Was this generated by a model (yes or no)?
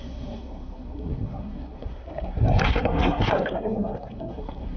yes